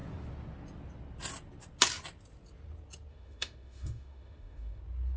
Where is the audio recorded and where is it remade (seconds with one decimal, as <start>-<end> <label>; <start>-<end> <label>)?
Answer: 0.0-3.1 recorded; 3.1-4.8 remade; 4.8-5.2 recorded